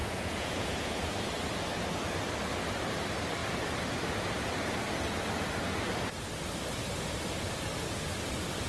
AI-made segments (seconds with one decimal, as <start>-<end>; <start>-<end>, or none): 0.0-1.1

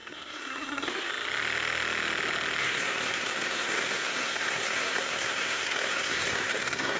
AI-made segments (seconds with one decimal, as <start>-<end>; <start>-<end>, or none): 0.0-1.1; 2.6-7.0

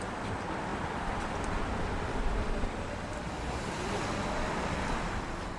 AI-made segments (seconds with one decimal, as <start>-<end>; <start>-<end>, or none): none